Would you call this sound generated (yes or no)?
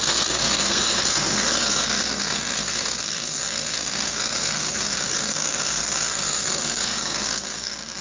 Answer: yes